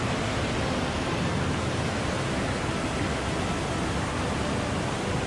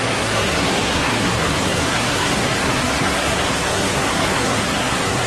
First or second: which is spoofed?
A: second